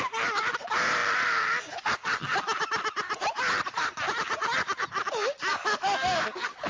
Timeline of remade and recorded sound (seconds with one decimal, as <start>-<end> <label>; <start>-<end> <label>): 0.0-5.5 recorded; 5.5-6.7 remade